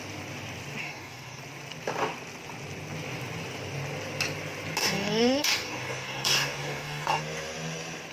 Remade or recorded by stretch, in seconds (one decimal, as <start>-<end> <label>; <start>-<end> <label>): 0.0-0.8 recorded; 0.8-1.4 remade; 1.4-4.8 recorded; 4.8-7.2 remade; 7.2-8.1 recorded